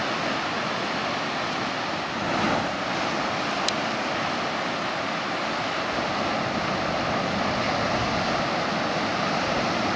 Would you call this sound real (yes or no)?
yes